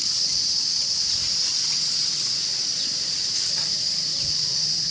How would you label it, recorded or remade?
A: remade